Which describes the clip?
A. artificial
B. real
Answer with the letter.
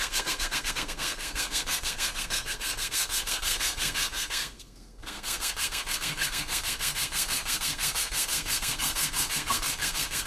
A